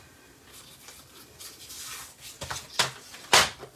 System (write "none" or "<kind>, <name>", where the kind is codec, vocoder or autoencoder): none